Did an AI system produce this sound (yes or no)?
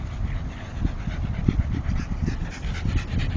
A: no